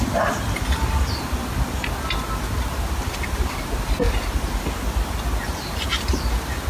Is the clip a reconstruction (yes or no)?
no